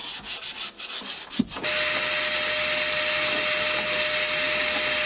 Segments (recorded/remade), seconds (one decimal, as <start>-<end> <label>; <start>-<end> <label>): 0.0-5.1 recorded